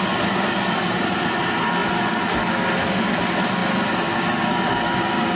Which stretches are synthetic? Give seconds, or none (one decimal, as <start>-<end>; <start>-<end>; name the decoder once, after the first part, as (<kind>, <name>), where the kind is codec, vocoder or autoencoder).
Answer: none